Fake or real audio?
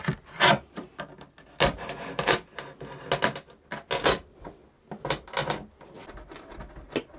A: real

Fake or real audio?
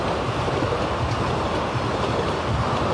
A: real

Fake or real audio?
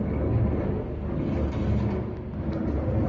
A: real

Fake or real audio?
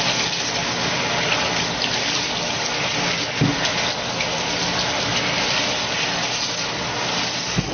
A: real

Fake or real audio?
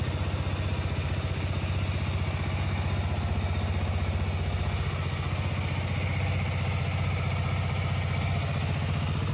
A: real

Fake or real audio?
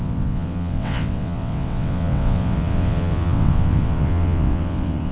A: fake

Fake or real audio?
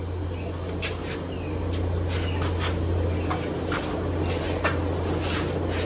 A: real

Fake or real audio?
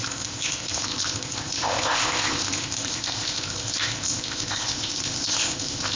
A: fake